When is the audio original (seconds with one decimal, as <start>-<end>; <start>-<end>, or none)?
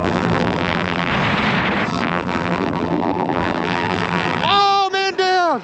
1.1-1.9; 4.6-5.6